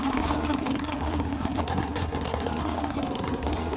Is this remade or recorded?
remade